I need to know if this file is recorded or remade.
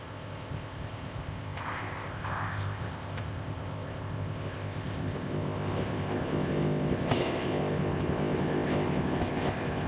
remade